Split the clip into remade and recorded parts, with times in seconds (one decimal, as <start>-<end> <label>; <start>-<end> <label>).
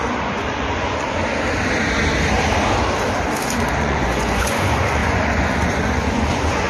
0.0-1.2 remade; 1.2-3.8 recorded; 3.8-6.7 remade